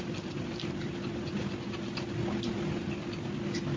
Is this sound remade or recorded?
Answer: recorded